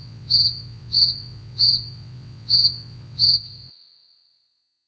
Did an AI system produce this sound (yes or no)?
yes